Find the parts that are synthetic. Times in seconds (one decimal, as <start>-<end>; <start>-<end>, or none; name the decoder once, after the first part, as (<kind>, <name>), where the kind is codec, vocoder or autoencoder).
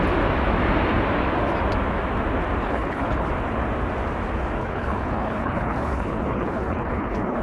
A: 2.6-3.3 (codec, HILCodec); 4.6-7.4